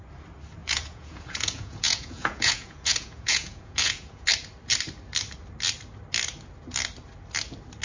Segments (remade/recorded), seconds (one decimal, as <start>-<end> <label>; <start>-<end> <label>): 0.0-0.6 recorded; 0.6-4.3 remade; 4.3-7.8 recorded